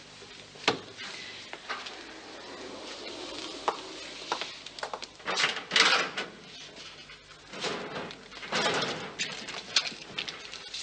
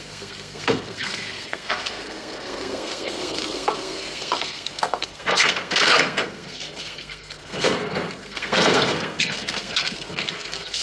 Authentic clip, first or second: first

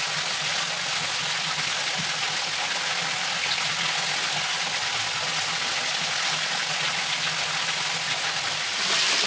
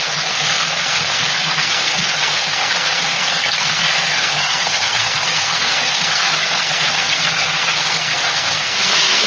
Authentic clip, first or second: first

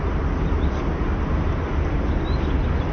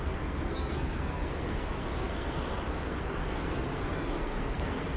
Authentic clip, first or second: first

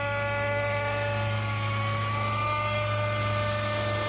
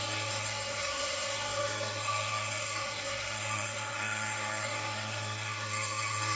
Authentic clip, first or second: first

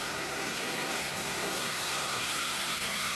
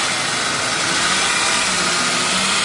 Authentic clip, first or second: second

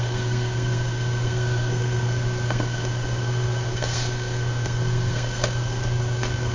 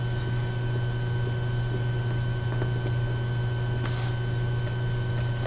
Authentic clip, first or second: second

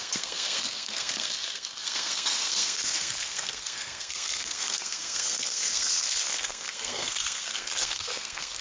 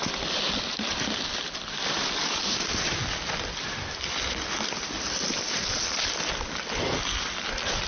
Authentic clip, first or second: second